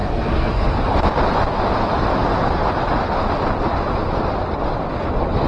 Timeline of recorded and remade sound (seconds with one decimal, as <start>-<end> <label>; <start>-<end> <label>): 0.0-0.7 remade; 0.7-5.5 recorded